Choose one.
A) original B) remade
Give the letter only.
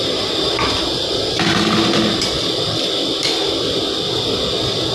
A